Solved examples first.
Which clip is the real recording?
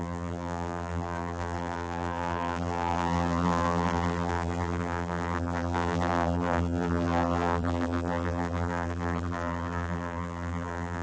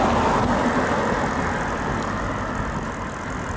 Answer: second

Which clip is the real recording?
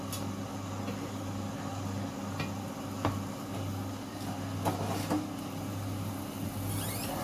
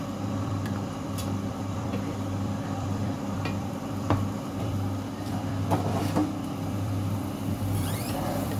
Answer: first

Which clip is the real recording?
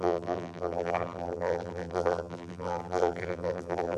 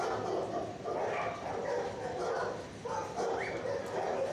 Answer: second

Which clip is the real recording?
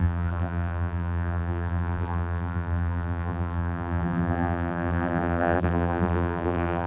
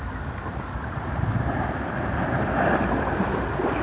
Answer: second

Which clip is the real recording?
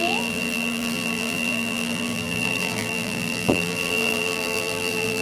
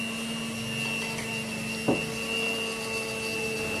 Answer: second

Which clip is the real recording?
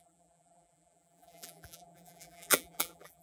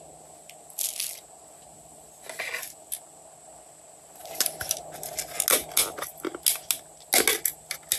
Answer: second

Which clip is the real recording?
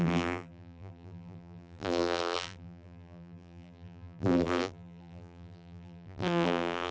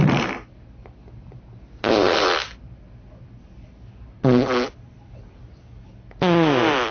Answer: second